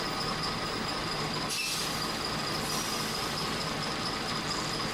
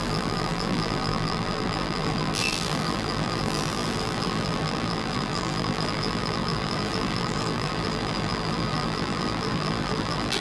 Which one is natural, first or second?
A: first